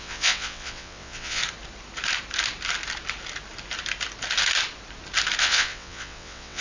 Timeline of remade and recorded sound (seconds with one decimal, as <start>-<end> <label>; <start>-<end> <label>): 0.0-1.4 remade; 1.4-5.4 recorded; 5.4-6.6 remade